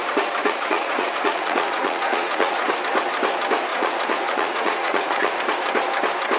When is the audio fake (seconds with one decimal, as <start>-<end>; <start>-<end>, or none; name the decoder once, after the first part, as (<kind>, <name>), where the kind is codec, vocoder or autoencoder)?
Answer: 0.4-2.7 (vocoder, Vocos); 3.7-5.4